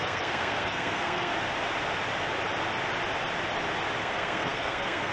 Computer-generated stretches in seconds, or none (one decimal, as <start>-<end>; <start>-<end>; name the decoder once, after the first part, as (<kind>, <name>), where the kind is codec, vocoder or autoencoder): 0.0-1.3 (codec, SNAC); 4.0-5.1